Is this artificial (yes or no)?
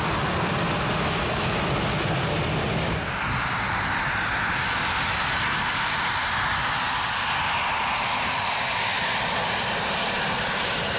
no